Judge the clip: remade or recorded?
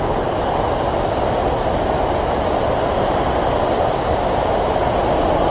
recorded